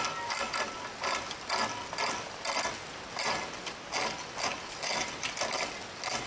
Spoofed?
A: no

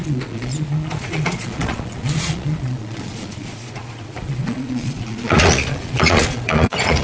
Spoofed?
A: yes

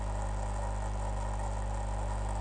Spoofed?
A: no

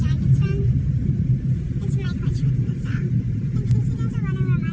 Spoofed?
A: no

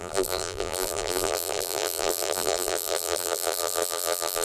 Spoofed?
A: yes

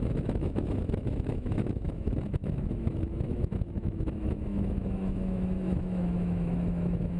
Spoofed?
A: yes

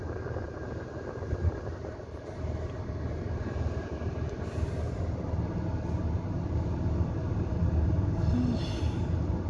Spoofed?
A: no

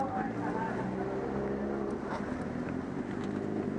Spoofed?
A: no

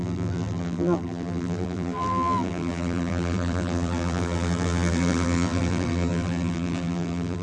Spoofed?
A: yes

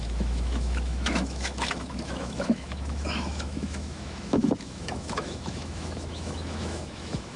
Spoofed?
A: yes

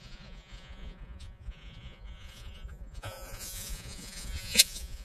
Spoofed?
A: yes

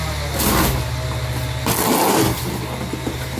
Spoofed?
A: no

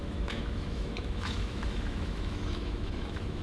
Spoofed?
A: yes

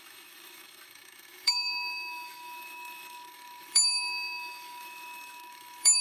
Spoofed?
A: yes